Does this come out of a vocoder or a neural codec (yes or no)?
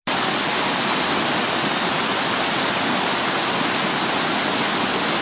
no